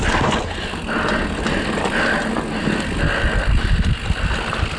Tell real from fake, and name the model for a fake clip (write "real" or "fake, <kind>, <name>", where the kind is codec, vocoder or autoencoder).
real